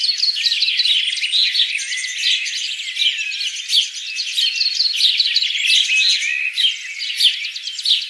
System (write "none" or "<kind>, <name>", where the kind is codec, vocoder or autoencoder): none